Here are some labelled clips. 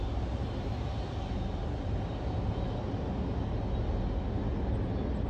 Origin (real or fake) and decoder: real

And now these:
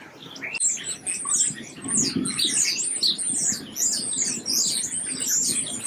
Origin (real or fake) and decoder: real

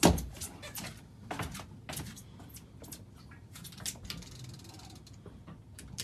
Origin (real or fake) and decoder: real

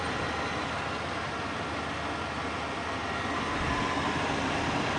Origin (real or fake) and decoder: real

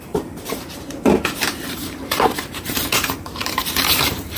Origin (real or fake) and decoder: fake, vocoder, BigVGAN v2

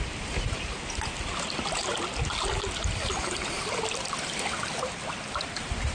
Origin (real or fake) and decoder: real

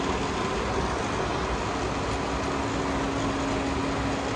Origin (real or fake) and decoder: real